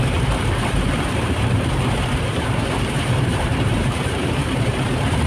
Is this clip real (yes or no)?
no